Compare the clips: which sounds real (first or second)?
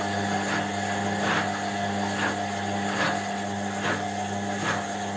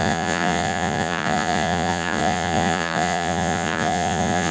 first